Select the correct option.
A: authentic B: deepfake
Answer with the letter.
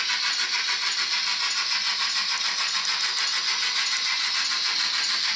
A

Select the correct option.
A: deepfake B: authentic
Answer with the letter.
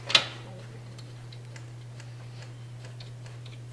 B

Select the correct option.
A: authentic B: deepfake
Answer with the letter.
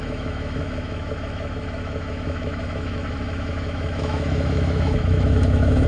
B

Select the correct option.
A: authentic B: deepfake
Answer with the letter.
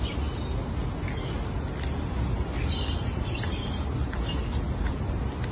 A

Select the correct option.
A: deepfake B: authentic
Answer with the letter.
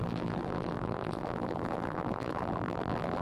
A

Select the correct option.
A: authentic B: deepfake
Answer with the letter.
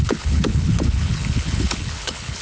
B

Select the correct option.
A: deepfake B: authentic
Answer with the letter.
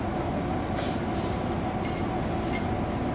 B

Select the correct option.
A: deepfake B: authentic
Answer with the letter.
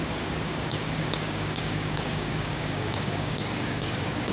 A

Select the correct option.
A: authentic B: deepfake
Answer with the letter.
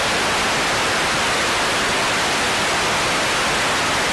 A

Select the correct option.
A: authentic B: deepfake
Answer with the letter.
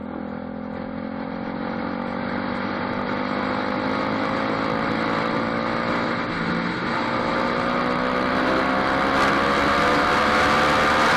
A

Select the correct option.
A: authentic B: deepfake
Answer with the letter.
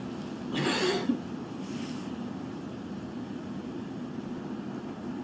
A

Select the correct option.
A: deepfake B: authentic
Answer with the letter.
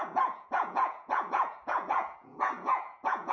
A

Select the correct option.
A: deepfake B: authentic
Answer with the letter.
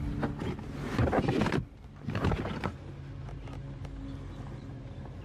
B